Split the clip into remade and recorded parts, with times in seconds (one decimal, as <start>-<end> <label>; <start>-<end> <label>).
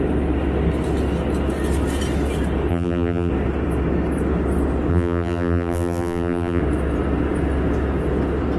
0.0-2.7 recorded; 2.7-3.3 remade; 3.3-4.9 recorded; 4.9-6.6 remade; 6.6-8.6 recorded